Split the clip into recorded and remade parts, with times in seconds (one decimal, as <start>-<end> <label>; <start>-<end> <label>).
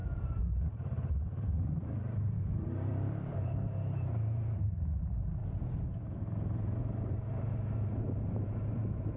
0.0-5.4 remade; 5.4-6.2 recorded; 6.2-9.2 remade